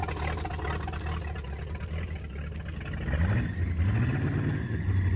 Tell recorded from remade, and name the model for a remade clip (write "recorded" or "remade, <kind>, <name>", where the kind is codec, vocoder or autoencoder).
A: recorded